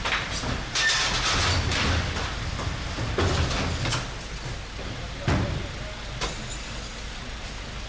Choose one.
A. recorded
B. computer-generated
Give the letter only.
A